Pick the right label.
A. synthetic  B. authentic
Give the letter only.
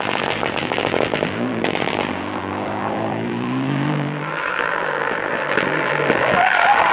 A